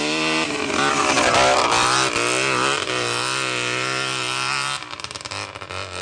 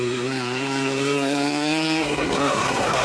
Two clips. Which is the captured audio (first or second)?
first